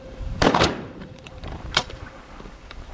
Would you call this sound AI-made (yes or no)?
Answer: yes